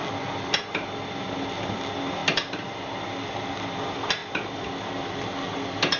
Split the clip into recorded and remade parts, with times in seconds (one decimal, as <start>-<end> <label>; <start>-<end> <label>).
0.0-6.0 recorded